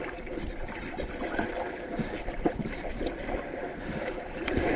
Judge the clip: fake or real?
fake